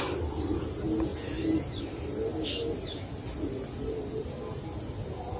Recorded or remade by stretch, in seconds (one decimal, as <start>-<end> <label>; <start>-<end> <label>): 0.0-5.4 recorded